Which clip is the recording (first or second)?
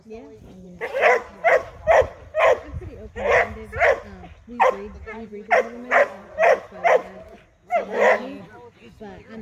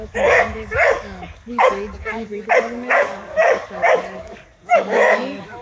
first